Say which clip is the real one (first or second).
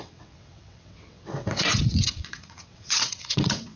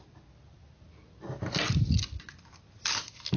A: second